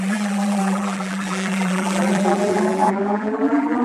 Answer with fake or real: fake